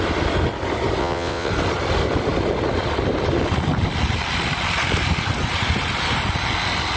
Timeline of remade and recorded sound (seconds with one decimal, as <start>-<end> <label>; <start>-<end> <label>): 0.0-1.0 recorded; 1.0-1.5 remade; 1.5-7.0 recorded